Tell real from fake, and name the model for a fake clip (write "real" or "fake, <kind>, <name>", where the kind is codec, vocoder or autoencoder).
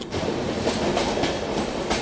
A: real